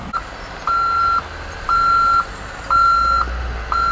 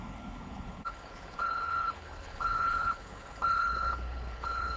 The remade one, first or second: second